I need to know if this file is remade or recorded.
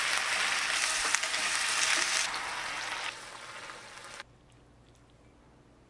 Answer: recorded